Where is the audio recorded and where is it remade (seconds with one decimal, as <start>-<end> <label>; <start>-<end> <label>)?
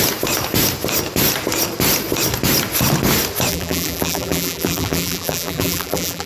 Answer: 0.0-3.5 recorded; 3.5-6.3 remade